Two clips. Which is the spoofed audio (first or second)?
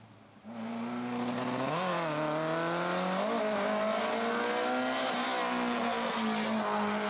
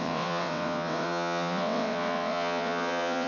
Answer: second